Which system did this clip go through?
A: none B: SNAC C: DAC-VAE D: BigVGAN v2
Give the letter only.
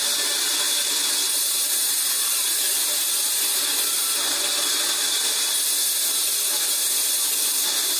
A